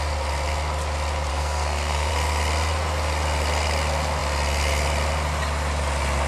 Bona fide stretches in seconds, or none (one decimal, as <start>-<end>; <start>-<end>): 0.0-1.3; 2.1-6.3